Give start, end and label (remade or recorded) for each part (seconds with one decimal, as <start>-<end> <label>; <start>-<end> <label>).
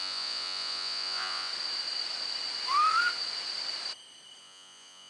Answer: 0.0-1.5 remade; 1.5-4.4 recorded; 4.4-5.1 remade